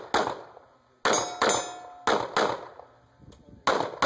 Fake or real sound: real